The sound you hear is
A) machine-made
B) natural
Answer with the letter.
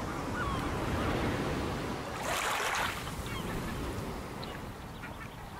B